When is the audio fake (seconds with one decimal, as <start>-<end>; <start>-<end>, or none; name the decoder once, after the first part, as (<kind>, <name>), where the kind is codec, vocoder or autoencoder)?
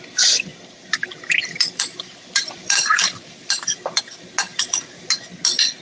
0.5-4.0 (vocoder, BigVGAN v2); 4.5-5.1